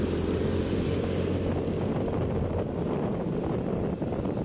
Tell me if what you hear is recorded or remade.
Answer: remade